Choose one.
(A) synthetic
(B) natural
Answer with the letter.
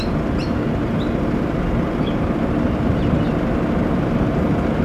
B